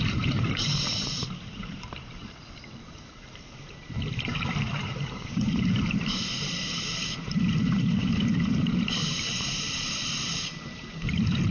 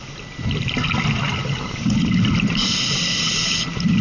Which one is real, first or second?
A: second